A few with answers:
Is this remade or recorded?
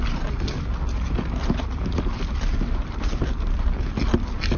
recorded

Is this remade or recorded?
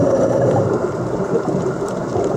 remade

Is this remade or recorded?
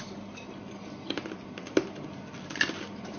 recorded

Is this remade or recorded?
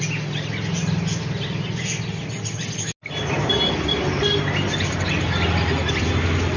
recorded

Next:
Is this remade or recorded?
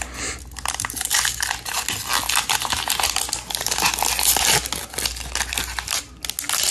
recorded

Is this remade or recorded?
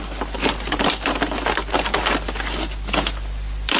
recorded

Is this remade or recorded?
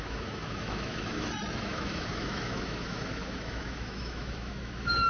remade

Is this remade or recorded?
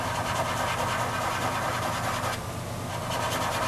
recorded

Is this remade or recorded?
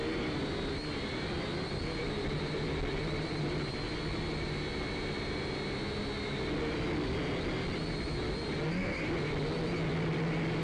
recorded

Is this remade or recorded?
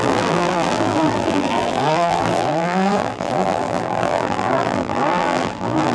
remade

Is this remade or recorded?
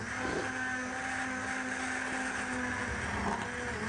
recorded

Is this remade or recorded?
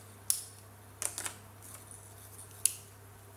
recorded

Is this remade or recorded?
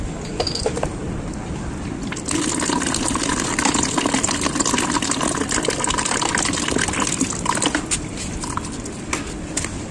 recorded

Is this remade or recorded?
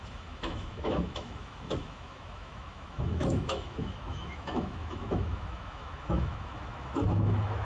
remade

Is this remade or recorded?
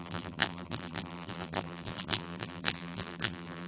remade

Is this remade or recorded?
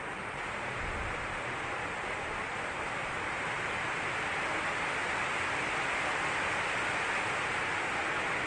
recorded